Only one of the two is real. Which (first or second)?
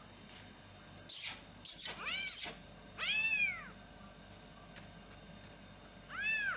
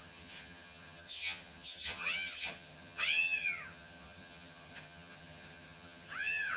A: first